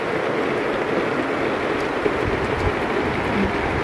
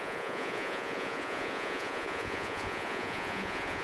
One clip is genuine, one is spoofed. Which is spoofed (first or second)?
second